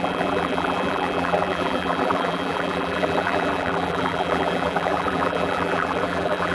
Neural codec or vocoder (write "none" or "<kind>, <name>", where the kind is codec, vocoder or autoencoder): vocoder, BigVGAN v2